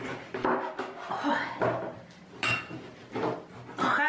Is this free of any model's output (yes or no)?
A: yes